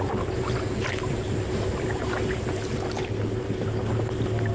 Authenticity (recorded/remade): recorded